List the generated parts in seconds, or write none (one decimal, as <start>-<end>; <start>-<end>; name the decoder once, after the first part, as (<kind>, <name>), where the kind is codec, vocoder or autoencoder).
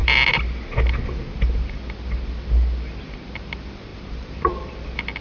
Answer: 3.9-4.7 (vocoder, BigVGAN v2)